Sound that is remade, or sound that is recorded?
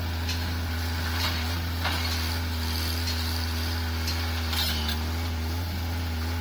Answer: recorded